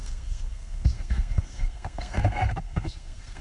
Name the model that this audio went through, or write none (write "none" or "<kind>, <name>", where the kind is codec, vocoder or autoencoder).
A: codec, SNAC